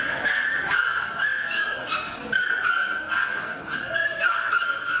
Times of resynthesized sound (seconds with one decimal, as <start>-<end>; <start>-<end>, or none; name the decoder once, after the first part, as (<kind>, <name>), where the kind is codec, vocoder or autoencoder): 0.0-5.0 (codec, SNAC)